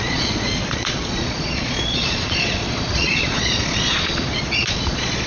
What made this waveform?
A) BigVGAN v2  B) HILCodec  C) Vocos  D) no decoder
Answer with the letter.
C